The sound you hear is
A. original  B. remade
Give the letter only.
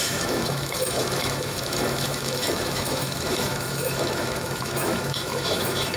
B